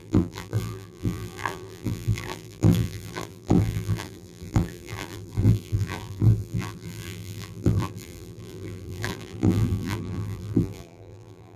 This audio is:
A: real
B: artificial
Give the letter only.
B